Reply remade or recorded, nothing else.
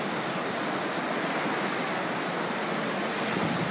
recorded